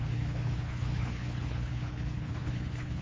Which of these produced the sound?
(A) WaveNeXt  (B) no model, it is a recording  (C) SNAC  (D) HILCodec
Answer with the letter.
D